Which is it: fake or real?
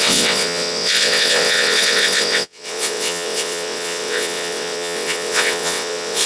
fake